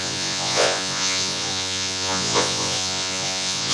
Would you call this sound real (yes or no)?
no